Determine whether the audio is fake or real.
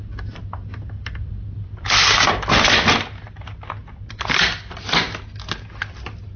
real